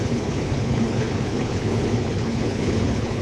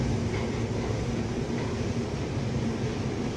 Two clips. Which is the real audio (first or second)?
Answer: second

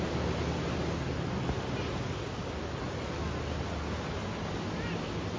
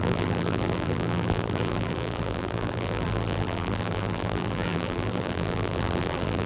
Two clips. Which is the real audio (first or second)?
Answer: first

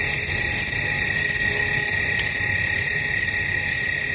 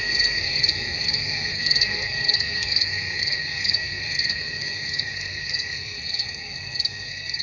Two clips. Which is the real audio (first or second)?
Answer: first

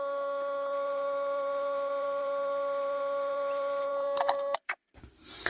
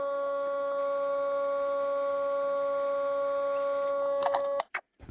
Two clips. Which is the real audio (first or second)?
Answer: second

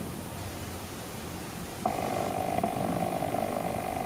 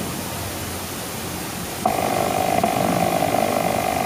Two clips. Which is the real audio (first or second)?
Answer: second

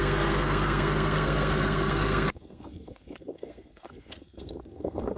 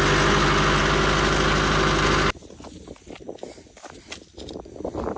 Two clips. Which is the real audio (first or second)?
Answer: second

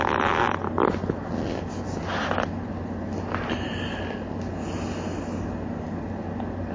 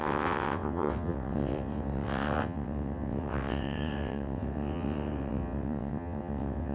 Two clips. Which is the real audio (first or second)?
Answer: first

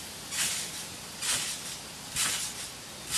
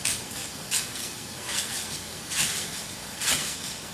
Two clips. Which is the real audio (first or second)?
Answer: first